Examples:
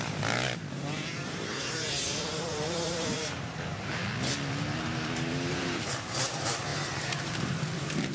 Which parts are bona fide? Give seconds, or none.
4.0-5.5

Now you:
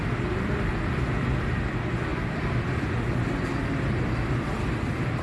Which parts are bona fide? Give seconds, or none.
0.7-5.2

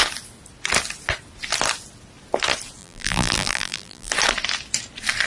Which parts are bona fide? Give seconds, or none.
0.0-2.8; 4.1-5.3

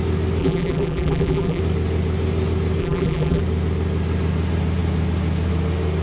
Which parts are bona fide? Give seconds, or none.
0.0-0.4; 1.6-2.8; 3.4-6.0

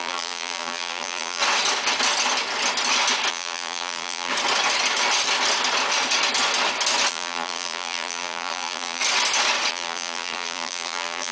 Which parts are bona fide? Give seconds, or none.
1.4-3.3; 4.3-7.1; 9.0-9.7